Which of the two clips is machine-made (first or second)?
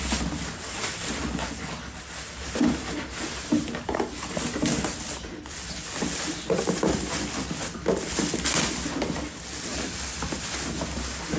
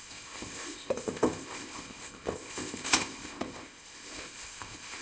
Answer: second